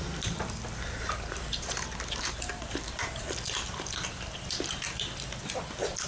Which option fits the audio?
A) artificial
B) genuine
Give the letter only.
A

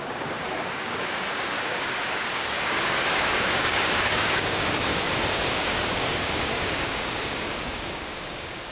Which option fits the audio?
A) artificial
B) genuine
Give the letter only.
A